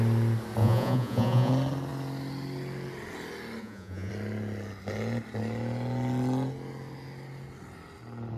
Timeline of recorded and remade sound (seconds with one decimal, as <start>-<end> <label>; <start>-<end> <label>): 0.0-0.6 recorded; 0.6-1.5 remade; 1.5-3.6 recorded; 3.6-4.1 remade; 4.1-8.4 recorded